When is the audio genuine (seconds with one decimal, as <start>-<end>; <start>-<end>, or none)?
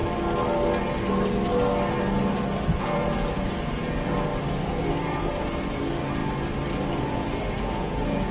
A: 0.0-2.8; 4.3-5.1; 6.2-7.0